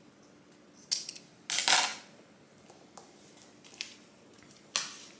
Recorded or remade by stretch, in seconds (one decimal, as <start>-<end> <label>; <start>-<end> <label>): 0.0-5.2 recorded